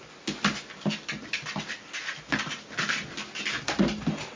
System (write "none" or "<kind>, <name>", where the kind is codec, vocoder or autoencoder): none